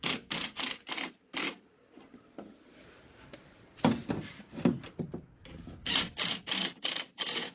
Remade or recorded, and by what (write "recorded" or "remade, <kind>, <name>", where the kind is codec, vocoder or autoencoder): remade, vocoder, BigVGAN v2